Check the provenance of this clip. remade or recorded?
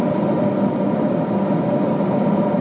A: recorded